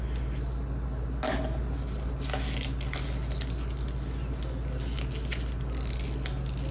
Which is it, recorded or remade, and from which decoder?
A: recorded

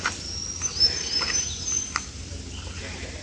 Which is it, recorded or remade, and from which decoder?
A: recorded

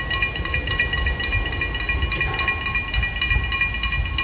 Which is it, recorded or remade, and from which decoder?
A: recorded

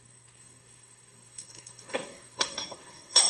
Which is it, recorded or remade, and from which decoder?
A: remade, codec, SNAC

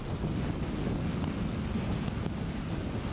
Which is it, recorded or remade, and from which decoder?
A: recorded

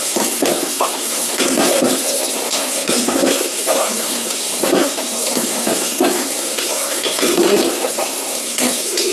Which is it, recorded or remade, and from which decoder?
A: remade, codec, SNAC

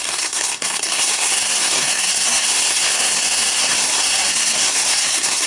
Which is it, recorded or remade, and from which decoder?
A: remade, codec, SNAC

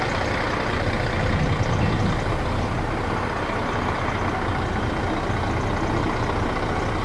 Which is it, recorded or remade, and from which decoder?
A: recorded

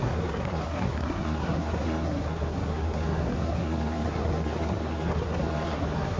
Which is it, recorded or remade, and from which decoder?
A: remade, codec, SNAC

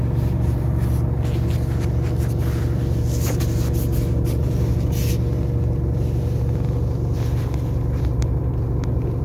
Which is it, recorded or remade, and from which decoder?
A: recorded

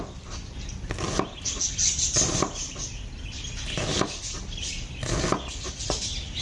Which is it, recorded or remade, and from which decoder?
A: recorded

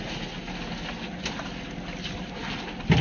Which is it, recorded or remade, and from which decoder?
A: recorded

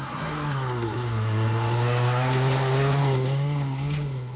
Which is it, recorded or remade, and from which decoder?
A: remade, codec, SNAC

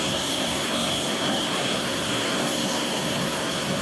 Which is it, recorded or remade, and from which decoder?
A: remade, codec, SNAC